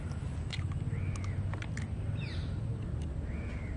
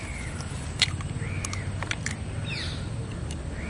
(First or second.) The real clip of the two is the first